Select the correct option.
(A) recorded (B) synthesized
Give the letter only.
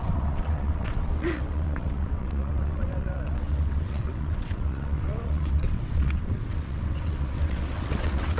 B